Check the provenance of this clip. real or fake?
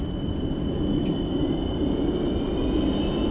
real